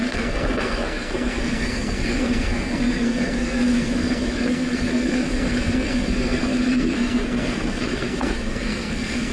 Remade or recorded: remade